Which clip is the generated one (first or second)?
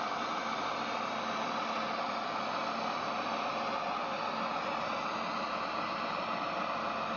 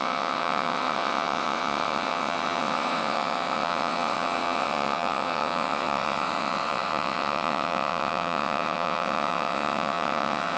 second